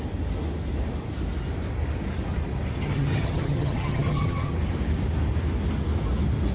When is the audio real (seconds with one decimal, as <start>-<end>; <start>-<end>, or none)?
0.0-2.8; 4.5-6.5